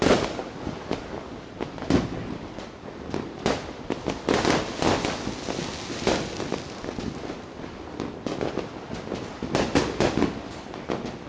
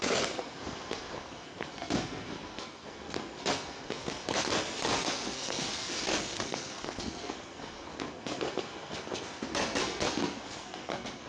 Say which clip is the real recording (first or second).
first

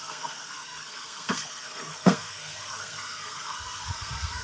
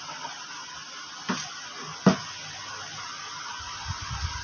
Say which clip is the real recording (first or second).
second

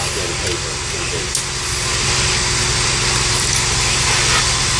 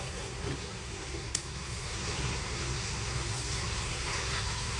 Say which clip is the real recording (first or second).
first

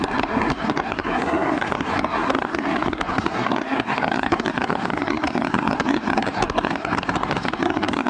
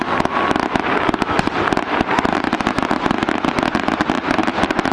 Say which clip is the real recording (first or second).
second